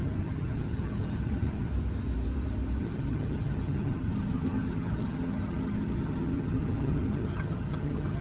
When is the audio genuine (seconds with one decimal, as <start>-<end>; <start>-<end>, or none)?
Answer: 1.7-2.8